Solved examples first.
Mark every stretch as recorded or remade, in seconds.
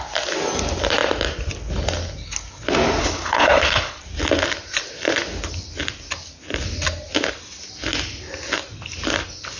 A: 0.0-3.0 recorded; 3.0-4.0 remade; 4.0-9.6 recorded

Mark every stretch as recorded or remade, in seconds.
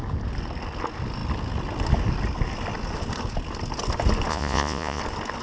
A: 0.0-4.3 recorded; 4.3-5.0 remade; 5.0-5.4 recorded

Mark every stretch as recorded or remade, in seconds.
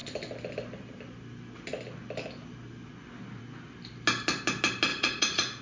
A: 0.0-4.9 recorded; 4.9-5.6 remade